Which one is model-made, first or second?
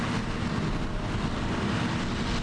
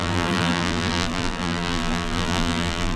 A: second